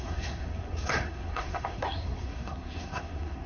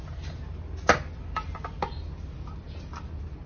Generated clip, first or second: first